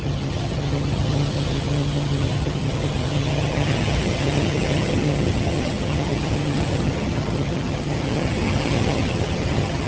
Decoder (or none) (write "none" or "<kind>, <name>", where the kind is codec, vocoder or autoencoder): vocoder, HiFi-GAN